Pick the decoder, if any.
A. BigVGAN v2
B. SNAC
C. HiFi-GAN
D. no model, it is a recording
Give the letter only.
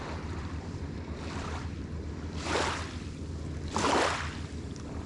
A